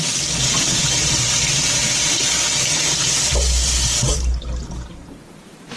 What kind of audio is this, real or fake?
real